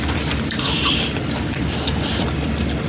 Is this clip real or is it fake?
real